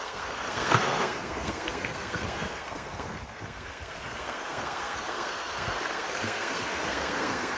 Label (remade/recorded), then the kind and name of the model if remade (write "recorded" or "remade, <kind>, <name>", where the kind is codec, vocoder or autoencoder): remade, codec, SNAC